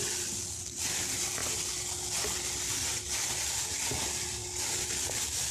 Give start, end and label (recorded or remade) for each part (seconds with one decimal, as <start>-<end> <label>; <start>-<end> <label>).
0.0-5.5 recorded

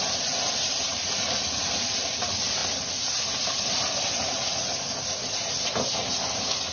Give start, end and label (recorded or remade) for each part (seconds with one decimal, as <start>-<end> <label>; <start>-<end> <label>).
0.0-2.6 remade; 2.6-6.7 recorded

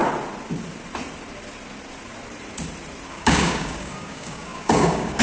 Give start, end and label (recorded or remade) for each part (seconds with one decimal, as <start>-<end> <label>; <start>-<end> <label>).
0.0-3.1 recorded; 3.1-5.2 remade

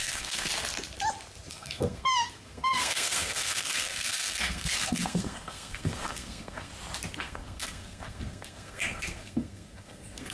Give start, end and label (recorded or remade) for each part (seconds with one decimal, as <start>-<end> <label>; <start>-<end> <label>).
0.0-0.5 remade; 0.5-1.5 recorded; 1.5-6.7 remade; 6.7-7.2 recorded; 7.2-10.3 remade